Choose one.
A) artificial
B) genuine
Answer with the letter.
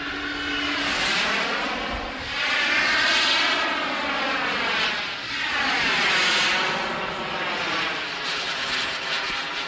B